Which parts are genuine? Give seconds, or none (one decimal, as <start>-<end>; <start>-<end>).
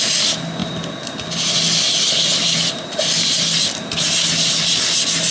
0.0-5.3